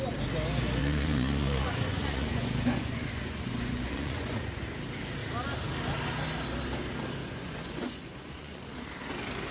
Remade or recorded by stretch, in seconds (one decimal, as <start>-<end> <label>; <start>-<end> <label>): 0.0-0.8 recorded; 0.8-4.6 remade; 4.6-7.2 recorded; 7.2-8.7 remade; 8.7-9.5 recorded